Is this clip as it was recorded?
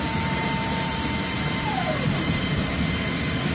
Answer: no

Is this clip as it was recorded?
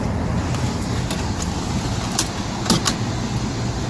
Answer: yes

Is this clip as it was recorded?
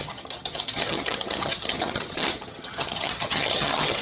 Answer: no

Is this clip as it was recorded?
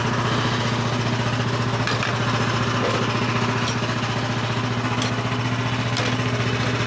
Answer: yes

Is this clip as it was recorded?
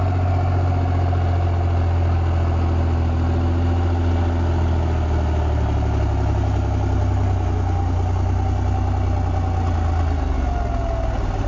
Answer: yes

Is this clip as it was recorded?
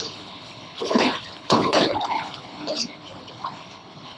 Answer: no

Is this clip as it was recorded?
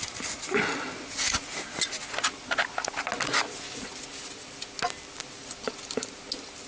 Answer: yes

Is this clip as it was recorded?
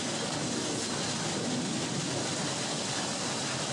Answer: yes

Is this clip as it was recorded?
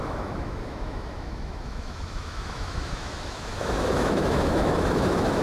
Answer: no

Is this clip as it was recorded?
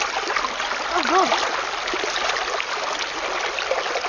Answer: yes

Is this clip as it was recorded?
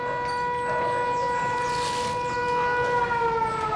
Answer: yes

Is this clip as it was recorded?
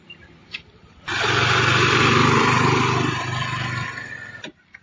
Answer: yes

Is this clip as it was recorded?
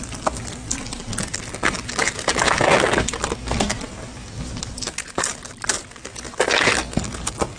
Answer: yes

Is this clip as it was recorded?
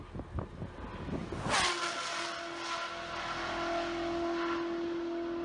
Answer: yes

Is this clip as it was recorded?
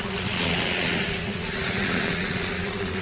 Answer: no